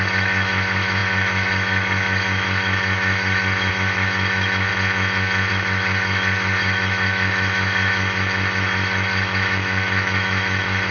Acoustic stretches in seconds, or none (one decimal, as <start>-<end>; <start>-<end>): 4.7-5.5